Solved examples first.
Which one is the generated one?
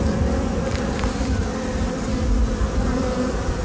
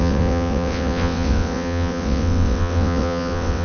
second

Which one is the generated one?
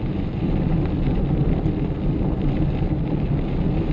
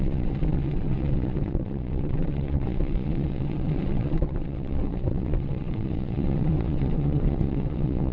second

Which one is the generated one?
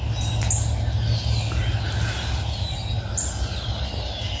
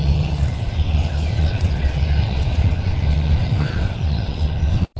second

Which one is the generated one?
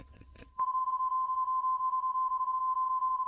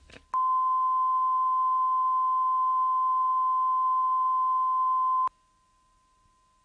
first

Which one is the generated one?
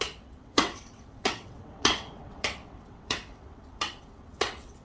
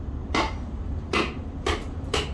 first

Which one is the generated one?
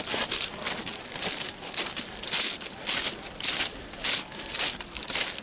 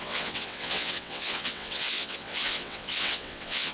second